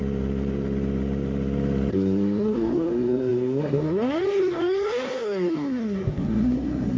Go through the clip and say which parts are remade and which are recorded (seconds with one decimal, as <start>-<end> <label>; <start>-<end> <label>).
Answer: 0.0-1.9 recorded; 1.9-7.0 remade